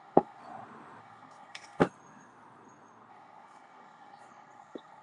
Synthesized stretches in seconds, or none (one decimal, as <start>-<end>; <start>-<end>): 0.0-0.4; 1.0-1.8; 3.1-5.0